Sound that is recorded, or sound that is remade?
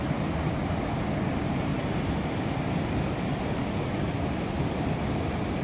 recorded